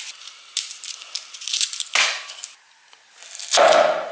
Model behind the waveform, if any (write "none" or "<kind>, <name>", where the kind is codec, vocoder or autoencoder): none